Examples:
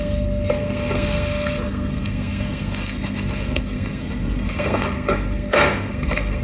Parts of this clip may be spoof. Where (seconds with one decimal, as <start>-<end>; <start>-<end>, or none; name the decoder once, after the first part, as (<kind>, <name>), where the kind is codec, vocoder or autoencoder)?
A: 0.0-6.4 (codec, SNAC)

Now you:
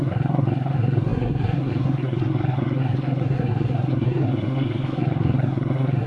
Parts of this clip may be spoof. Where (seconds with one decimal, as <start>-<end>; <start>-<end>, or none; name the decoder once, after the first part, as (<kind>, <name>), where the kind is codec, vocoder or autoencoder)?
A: 0.0-6.1 (codec, SNAC)

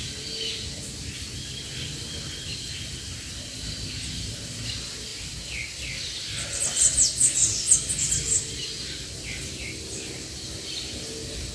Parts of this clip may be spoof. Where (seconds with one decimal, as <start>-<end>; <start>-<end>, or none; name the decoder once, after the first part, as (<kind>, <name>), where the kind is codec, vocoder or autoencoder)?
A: none